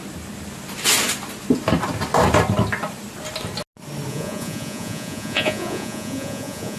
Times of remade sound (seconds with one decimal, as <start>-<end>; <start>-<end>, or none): 4.1-6.8